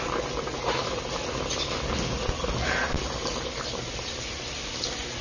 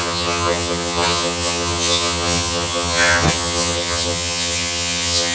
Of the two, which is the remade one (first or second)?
second